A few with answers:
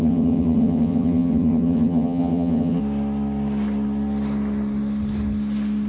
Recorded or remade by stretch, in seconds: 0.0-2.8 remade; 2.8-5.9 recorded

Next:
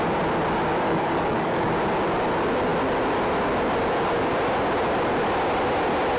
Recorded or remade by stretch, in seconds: 0.0-0.7 recorded; 0.7-1.7 remade; 1.7-6.2 recorded

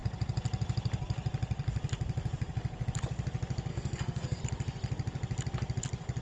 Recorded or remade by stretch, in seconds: 0.0-3.7 recorded; 3.7-4.4 remade; 4.4-6.2 recorded